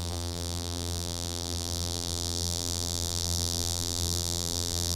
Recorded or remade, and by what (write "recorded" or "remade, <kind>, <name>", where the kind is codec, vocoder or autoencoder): remade, vocoder, BigVGAN v2